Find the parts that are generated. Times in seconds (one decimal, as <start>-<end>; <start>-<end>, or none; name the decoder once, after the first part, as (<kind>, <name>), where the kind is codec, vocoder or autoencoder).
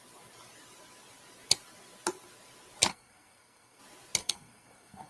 2.9-3.8 (codec, SNAC); 4.2-5.1